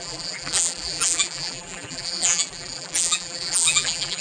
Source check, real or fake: fake